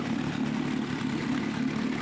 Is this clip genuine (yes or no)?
yes